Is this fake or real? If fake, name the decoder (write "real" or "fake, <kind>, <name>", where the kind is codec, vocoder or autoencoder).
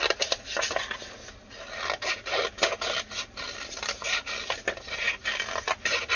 real